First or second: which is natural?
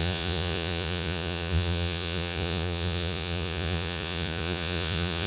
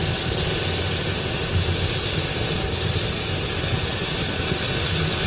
second